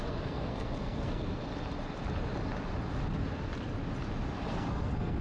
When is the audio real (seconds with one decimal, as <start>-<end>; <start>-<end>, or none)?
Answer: 1.4-4.5